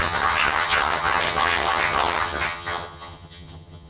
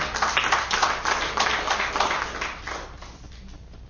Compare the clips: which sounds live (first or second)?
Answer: second